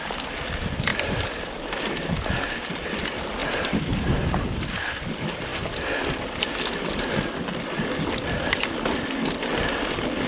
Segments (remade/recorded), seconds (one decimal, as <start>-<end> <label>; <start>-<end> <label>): 0.0-0.9 recorded; 0.9-1.8 remade; 1.8-3.4 recorded; 3.4-4.8 remade; 4.8-5.5 recorded; 5.5-9.2 remade; 9.2-10.3 recorded